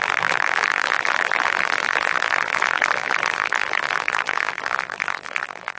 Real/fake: fake